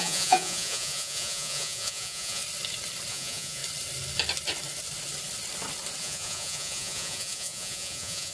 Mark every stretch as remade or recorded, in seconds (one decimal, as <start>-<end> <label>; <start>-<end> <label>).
0.0-2.4 remade; 2.4-3.1 recorded; 3.1-3.6 remade; 3.6-6.0 recorded; 6.0-8.3 remade